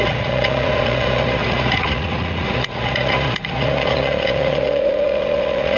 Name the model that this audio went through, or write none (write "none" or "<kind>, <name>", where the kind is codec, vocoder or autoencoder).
vocoder, Vocos